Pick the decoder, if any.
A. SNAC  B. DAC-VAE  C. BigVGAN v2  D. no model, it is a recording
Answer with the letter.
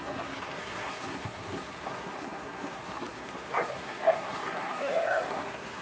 A